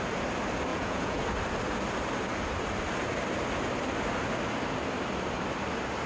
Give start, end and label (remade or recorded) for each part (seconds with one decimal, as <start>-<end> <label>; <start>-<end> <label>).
0.0-0.7 recorded; 0.7-1.2 remade; 1.2-6.1 recorded